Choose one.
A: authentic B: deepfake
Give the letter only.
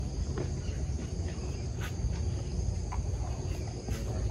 A